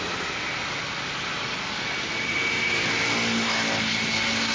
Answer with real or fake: real